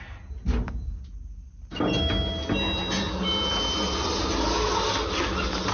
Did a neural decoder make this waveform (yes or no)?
no